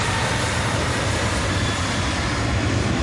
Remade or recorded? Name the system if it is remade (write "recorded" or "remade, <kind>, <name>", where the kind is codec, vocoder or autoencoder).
recorded